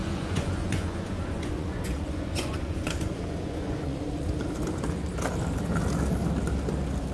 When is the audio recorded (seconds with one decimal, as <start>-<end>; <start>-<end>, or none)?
4.3-7.1